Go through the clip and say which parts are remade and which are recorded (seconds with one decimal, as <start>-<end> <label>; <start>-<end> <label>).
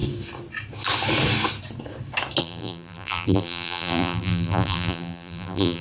0.0-2.4 recorded; 2.4-5.8 remade